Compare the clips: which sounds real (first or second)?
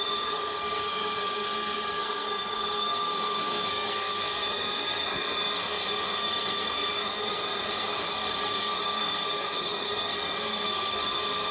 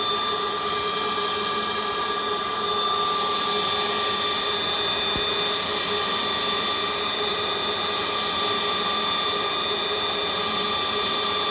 second